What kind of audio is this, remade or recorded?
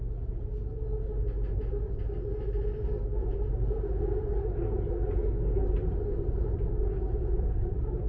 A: recorded